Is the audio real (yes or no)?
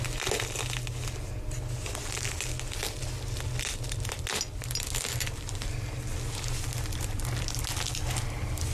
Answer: yes